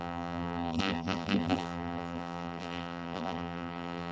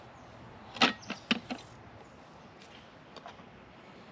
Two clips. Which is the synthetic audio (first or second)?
first